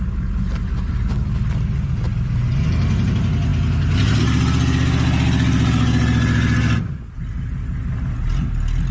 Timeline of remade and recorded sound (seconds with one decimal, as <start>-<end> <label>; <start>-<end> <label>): 0.0-0.6 recorded; 0.6-2.7 remade; 2.7-8.9 recorded